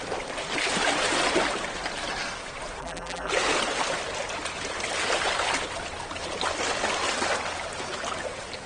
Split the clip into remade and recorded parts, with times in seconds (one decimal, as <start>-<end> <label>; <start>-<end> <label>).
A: 0.0-2.8 recorded; 2.8-3.3 remade; 3.3-8.7 recorded